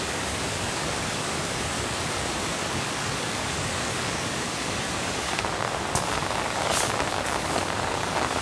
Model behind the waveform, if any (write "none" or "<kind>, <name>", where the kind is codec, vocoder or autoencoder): codec, DAC